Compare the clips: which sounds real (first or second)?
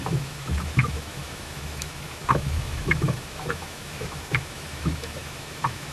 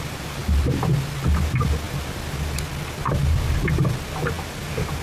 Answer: second